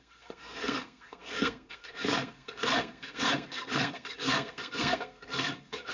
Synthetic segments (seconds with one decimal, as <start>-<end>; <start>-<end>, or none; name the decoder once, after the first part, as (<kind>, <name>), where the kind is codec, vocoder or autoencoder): 0.0-5.9 (codec, SNAC)